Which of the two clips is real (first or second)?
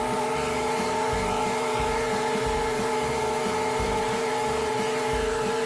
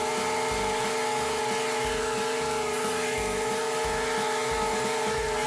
second